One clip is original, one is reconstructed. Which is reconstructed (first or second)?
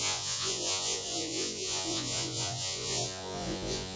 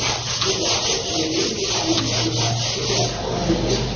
first